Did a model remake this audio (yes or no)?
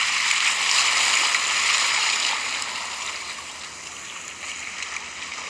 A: no